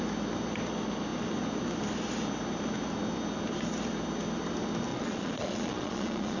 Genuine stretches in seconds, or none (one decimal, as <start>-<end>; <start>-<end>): 0.0-4.9